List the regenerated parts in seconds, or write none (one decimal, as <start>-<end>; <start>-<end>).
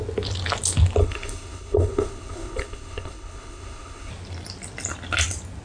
1.0-4.1